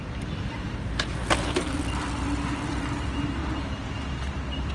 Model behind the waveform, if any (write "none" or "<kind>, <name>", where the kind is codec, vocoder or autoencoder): none